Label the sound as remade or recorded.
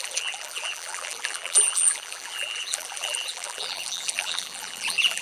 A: remade